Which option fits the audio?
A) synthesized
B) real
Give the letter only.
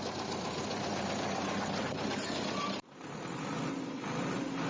A